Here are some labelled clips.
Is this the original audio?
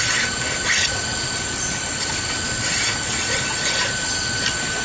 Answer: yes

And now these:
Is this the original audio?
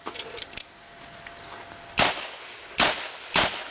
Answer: yes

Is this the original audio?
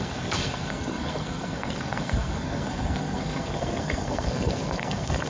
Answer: no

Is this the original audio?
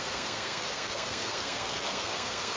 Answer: no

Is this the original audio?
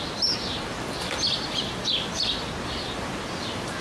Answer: yes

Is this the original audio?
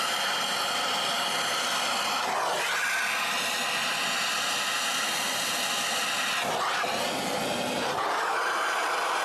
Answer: yes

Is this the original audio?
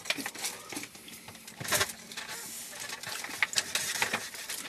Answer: yes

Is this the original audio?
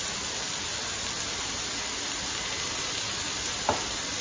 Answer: yes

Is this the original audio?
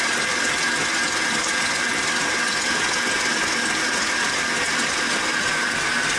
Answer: yes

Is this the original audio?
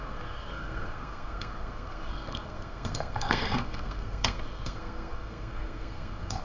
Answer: no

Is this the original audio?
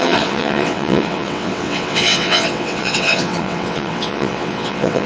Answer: no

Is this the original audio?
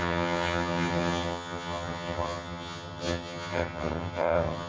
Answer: no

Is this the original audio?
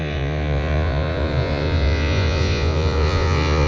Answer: no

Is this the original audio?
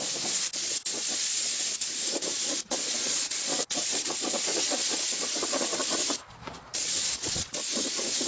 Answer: no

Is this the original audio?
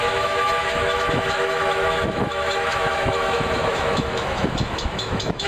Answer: no